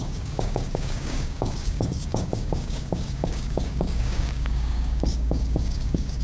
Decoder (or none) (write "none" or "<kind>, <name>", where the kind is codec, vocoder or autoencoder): codec, DAC